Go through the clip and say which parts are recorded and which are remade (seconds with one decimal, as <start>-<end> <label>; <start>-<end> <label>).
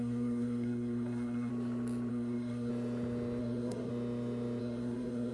0.0-1.5 remade; 1.5-2.1 recorded; 2.1-2.7 remade; 2.7-3.4 recorded; 3.4-3.9 remade; 3.9-4.6 recorded; 4.6-5.3 remade